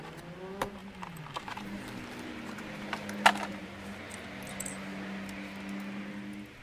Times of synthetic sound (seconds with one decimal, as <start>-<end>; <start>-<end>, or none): 0.8-2.3